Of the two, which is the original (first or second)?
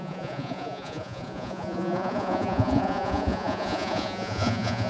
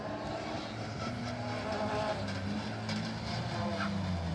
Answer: second